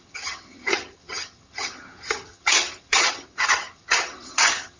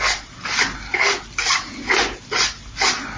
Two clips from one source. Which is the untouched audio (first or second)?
second